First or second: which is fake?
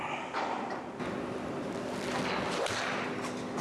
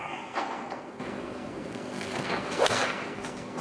second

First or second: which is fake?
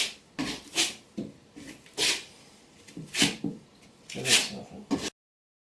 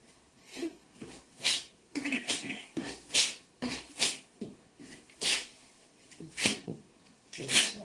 second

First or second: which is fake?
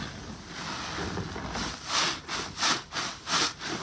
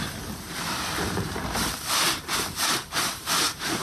second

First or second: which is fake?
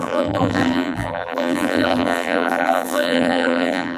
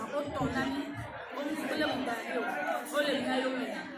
first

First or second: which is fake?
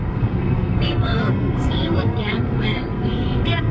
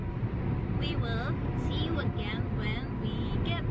first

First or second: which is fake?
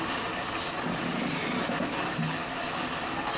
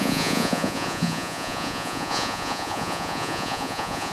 second